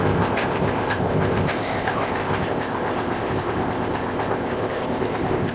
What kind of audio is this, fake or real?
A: fake